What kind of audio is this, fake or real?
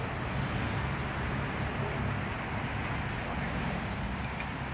real